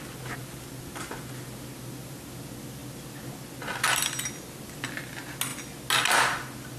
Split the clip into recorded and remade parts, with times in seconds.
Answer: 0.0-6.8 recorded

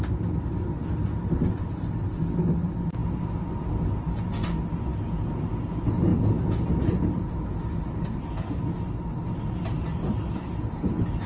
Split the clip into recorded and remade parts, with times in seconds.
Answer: 0.0-11.3 recorded

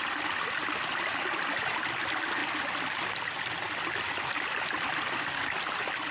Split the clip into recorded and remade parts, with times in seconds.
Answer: 0.0-6.1 recorded